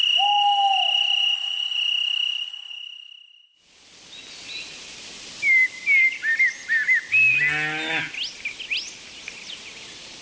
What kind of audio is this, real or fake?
real